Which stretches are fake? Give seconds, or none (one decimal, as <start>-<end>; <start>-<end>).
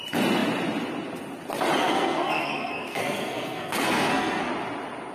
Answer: 1.8-4.5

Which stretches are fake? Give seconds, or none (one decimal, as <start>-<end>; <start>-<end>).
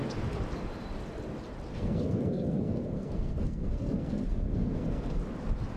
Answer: 1.7-5.2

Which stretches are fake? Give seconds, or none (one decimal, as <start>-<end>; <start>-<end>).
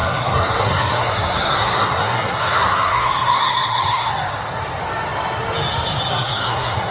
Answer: 0.0-4.1; 6.1-6.9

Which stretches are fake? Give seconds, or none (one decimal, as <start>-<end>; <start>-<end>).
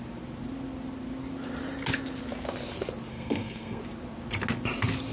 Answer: 3.1-3.8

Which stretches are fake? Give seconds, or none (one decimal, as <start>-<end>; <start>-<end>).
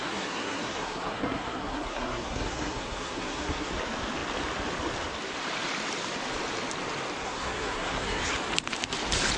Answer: 0.0-3.7; 7.2-8.2